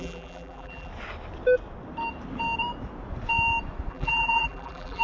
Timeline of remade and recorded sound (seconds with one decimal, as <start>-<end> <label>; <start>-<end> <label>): 0.0-0.9 remade; 0.9-3.9 recorded; 3.9-5.0 remade

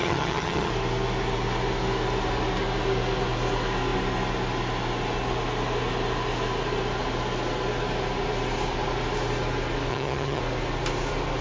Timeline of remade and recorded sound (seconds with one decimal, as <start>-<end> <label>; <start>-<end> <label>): 0.0-0.7 remade; 0.7-9.9 recorded; 9.9-10.4 remade; 10.4-11.4 recorded

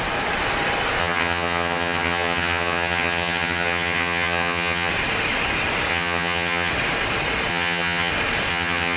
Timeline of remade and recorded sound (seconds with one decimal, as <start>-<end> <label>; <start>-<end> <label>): 0.0-1.0 recorded; 1.0-4.9 remade; 4.9-5.9 recorded; 5.9-6.7 remade; 6.7-7.5 recorded; 7.5-8.1 remade; 8.1-8.5 recorded; 8.5-9.0 remade